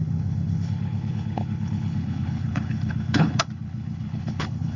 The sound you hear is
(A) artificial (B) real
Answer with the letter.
A